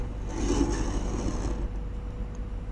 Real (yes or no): yes